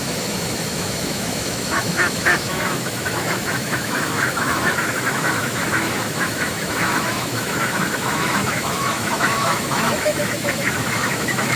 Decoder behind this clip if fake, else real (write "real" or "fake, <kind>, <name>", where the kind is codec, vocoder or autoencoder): fake, autoencoder, DAC-VAE